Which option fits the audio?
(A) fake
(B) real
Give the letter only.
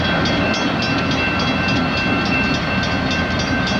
B